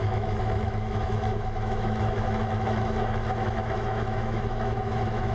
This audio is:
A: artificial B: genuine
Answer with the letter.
A